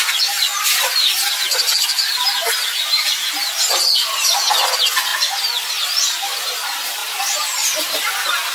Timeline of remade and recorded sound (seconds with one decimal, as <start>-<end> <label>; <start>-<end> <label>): 0.0-8.5 recorded